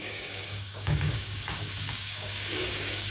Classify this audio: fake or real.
fake